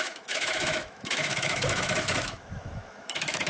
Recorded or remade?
remade